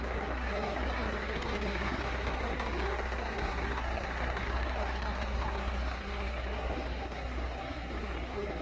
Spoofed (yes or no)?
yes